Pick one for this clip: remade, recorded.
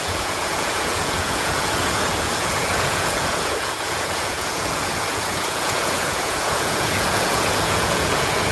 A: remade